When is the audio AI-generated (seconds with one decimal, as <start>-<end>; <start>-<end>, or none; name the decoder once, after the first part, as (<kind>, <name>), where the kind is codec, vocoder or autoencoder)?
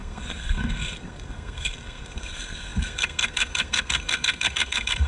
0.0-5.1 (codec, SNAC)